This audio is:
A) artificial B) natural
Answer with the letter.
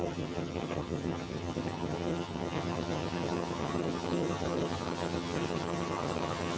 A